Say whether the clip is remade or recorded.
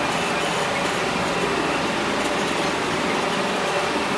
recorded